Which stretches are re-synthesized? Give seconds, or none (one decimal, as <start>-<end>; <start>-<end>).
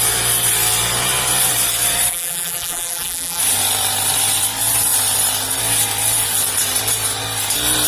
2.1-3.4